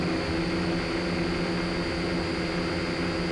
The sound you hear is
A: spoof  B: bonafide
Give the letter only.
B